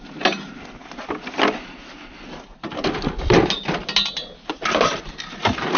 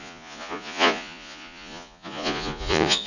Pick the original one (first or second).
first